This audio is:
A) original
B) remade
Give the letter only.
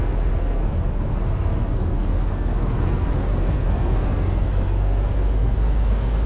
B